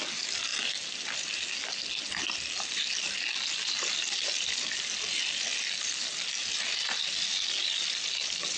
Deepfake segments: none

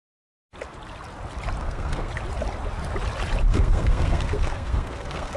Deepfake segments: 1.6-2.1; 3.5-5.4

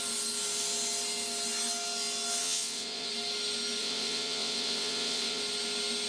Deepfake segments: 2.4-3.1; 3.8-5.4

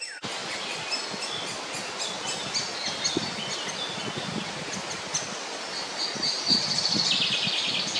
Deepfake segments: none

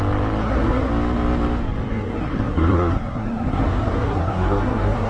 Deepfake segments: 0.4-0.9; 1.9-5.1

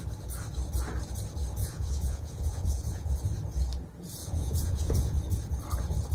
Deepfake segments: 1.6-3.2; 4.2-5.2